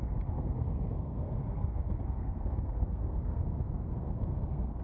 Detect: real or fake fake